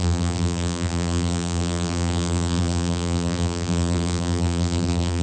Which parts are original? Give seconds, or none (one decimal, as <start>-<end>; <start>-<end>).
none